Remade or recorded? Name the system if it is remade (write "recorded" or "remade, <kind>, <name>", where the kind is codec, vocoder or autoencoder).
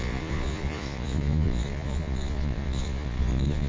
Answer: remade, vocoder, Vocos